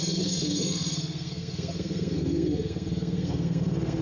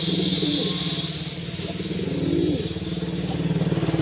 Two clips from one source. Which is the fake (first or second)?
first